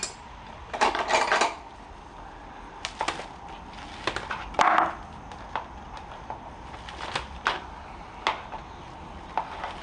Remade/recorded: recorded